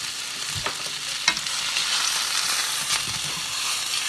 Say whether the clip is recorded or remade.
recorded